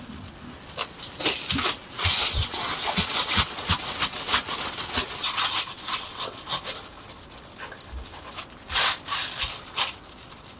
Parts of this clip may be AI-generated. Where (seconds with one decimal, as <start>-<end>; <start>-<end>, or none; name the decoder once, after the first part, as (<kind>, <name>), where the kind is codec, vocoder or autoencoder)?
1.8-6.4 (vocoder, WaveNeXt)